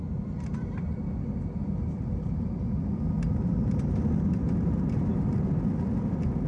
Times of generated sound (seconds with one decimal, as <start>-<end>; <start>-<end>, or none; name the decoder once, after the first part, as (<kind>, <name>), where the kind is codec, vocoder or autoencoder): none